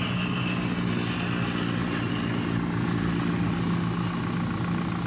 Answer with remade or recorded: recorded